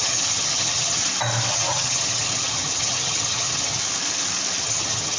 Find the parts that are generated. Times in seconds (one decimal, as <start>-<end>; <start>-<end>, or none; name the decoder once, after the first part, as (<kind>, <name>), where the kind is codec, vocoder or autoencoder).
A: 0.0-1.0 (vocoder, HiFi-GAN); 1.5-3.8; 4.6-5.2